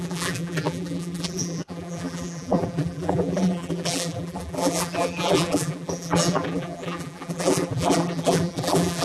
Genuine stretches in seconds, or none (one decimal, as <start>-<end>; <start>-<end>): none